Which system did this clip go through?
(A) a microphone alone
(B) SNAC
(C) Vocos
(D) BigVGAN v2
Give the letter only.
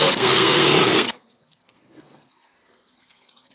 B